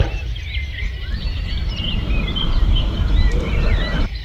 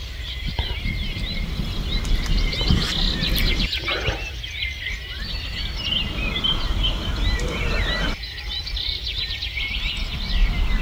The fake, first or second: first